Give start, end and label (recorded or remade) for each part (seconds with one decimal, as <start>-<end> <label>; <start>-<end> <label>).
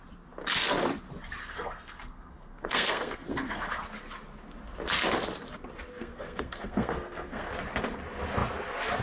0.0-1.4 recorded; 1.4-3.7 remade; 3.7-5.9 recorded; 5.9-7.5 remade; 7.5-9.0 recorded